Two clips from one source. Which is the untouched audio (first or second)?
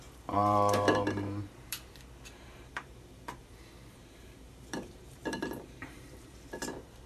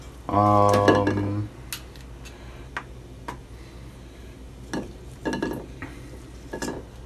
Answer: second